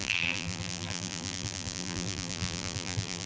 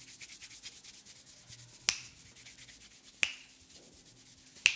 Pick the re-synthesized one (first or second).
first